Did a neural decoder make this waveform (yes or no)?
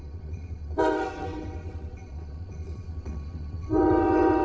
yes